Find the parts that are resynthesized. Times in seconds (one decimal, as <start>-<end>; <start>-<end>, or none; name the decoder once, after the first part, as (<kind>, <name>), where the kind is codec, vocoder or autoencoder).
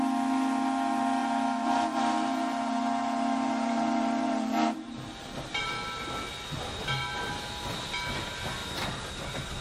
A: 1.2-5.6 (vocoder, BigVGAN v2); 8.6-9.1